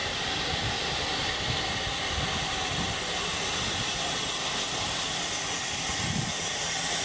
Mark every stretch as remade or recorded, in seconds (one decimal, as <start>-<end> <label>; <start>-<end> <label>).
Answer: 0.0-3.3 remade; 3.3-7.0 recorded